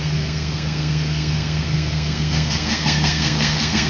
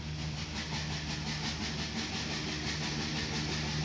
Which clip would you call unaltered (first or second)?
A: second